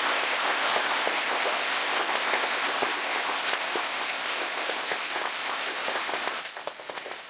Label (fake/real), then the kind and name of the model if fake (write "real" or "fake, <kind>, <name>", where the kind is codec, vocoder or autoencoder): fake, codec, ZipCodec